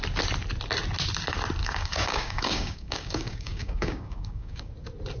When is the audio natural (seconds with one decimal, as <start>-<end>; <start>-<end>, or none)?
0.0-1.6; 4.7-5.2